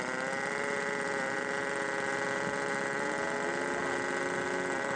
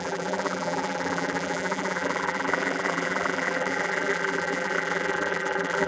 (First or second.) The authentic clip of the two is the first